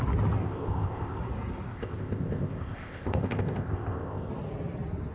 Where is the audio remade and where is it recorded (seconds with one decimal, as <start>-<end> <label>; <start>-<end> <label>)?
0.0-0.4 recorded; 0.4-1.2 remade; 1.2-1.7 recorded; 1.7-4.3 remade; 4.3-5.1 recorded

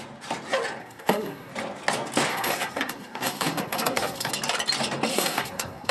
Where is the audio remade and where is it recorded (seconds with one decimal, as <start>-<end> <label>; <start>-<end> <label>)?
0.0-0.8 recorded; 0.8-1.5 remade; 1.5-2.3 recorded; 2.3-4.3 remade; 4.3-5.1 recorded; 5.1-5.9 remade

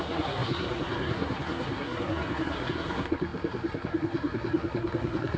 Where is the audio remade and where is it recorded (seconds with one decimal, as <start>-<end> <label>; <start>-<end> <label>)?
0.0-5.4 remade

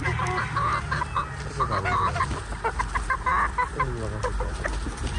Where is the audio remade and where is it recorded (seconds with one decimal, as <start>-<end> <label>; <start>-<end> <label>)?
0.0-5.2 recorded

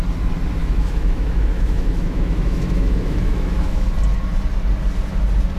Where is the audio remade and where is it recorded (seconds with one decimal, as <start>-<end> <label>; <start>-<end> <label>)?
0.0-0.6 recorded; 0.6-3.9 remade; 3.9-5.6 recorded